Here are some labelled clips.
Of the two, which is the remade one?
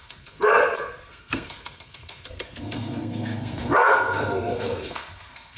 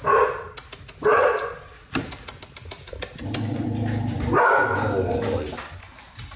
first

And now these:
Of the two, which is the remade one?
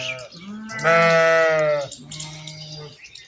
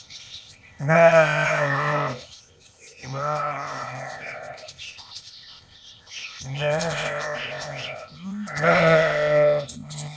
second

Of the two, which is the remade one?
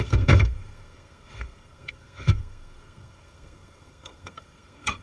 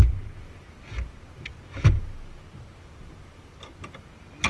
first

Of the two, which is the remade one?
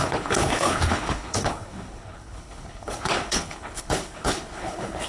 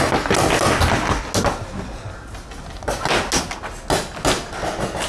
first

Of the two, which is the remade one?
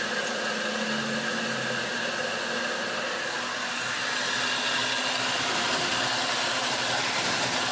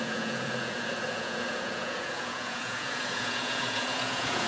second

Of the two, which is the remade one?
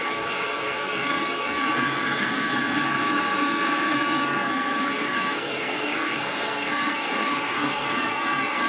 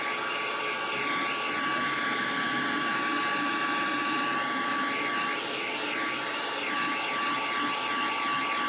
first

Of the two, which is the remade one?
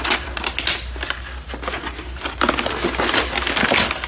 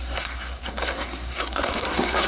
second